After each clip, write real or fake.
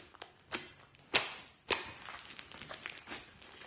real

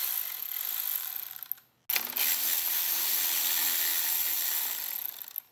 real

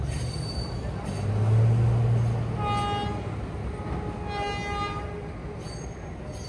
real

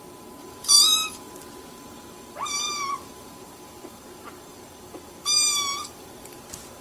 fake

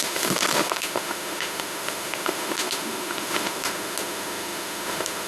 fake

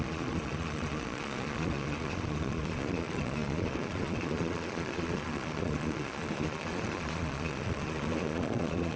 fake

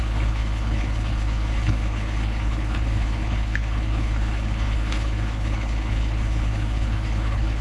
fake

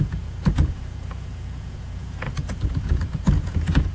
fake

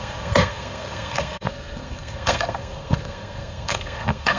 fake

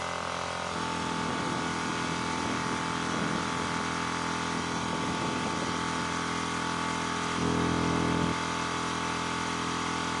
real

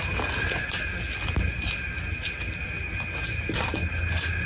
real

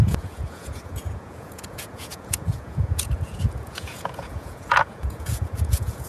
fake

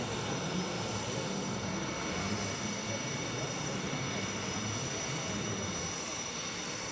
real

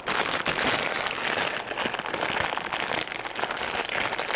real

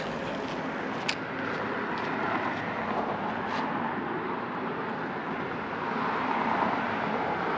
real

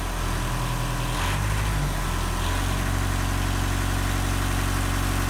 real